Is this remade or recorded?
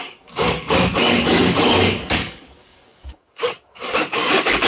remade